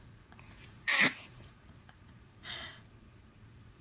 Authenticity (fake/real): fake